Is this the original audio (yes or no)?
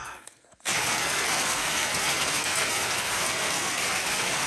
no